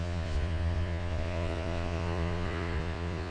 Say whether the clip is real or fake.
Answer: fake